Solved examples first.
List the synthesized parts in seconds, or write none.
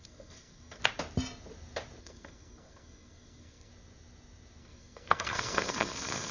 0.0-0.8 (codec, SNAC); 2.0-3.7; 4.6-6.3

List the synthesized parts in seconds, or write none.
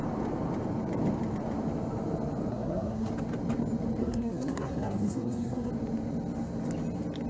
2.5-3.1 (codec, SNAC); 4.0-5.7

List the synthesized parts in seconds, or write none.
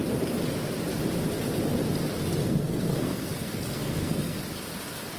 2.4-4.4 (codec, SNAC)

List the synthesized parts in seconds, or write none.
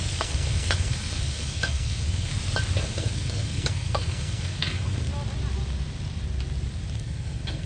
0.0-2.3 (codec, SNAC); 2.8-5.1; 6.9-7.7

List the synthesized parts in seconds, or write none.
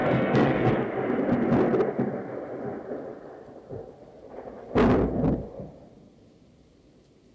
0.0-0.7 (codec, SNAC)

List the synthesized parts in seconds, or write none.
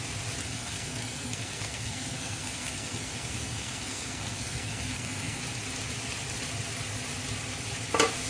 0.4-5.4 (codec, SNAC)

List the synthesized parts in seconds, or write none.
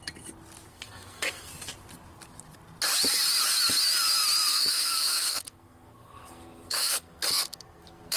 0.7-1.5 (codec, SNAC); 4.5-8.2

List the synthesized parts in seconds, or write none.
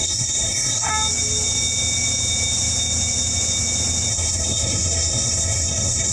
0.0-0.9 (codec, SNAC); 4.1-6.1